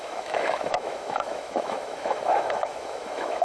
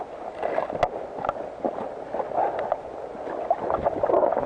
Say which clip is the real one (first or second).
second